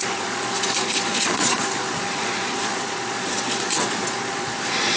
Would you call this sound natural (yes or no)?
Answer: no